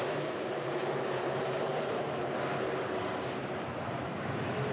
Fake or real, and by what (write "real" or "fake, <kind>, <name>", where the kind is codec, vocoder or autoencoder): fake, vocoder, BigVGAN v2